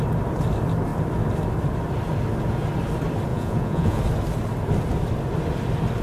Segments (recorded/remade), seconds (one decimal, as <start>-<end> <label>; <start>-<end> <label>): 0.0-3.3 recorded; 3.3-4.0 remade; 4.0-6.0 recorded